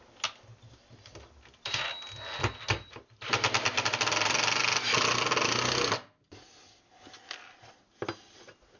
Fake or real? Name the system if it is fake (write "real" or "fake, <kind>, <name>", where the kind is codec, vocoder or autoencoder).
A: real